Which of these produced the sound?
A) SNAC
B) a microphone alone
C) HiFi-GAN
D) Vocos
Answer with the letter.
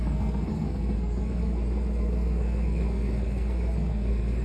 A